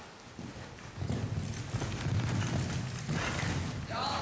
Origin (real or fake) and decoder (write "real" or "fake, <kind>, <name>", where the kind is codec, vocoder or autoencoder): real